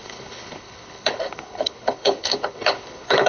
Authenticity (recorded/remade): remade